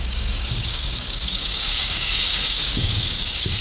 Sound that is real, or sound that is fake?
fake